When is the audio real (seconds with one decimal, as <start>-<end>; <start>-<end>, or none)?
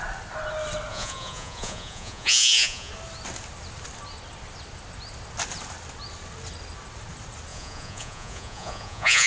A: 0.0-0.9; 2.9-7.5